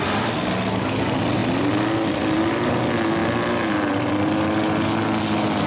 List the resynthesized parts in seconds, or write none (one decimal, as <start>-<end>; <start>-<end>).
1.4-2.7